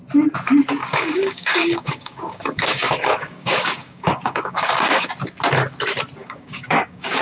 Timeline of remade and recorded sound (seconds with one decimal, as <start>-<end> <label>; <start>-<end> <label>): 0.0-0.8 recorded; 0.8-5.1 remade; 5.1-6.2 recorded; 6.2-7.2 remade